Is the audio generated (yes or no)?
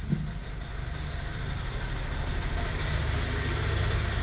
no